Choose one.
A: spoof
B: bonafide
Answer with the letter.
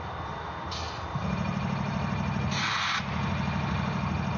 B